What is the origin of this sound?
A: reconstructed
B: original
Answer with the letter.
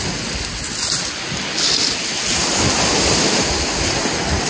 B